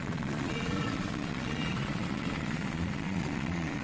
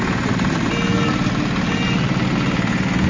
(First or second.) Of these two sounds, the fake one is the first